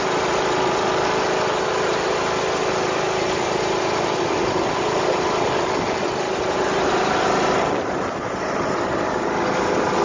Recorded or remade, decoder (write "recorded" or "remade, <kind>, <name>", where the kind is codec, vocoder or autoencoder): recorded